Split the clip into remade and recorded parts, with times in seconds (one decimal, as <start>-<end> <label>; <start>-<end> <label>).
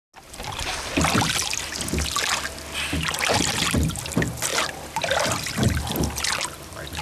0.0-4.5 recorded; 4.5-6.0 remade; 6.0-7.0 recorded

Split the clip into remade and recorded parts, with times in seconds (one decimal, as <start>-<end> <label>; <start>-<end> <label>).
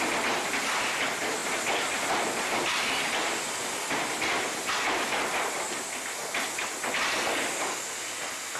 0.0-8.6 recorded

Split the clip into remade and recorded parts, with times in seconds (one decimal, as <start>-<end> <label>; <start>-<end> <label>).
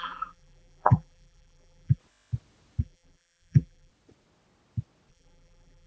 0.0-2.0 remade; 2.0-2.8 recorded; 2.8-3.9 remade; 3.9-5.1 recorded; 5.1-5.9 remade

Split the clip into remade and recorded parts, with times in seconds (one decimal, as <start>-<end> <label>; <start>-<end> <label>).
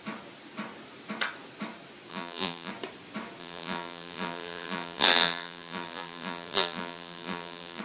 0.0-2.1 recorded; 2.1-2.7 remade; 2.7-3.4 recorded; 3.4-7.8 remade